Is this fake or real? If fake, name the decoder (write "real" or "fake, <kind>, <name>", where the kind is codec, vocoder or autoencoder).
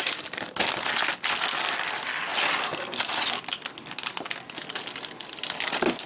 real